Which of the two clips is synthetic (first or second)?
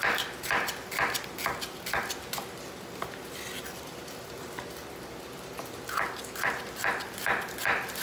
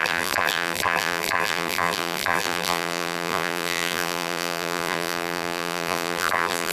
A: second